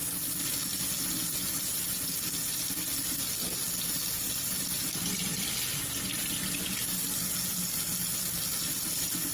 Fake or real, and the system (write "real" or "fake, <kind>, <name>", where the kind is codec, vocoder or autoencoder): real